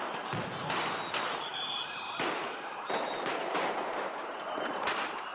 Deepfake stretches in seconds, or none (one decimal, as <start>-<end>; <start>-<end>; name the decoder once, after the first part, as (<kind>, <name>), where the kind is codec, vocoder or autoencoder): 1.5-4.7 (vocoder, BigVGAN v2)